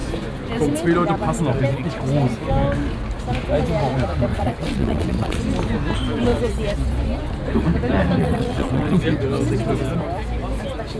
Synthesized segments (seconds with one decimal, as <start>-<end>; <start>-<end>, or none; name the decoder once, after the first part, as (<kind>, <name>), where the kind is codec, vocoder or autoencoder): 4.3-5.4 (vocoder, WaveNeXt); 8.2-9.0